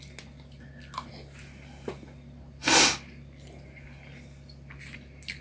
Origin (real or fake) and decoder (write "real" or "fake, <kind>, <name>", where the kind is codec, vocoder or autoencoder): real